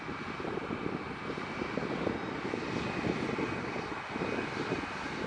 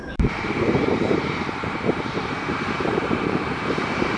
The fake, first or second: second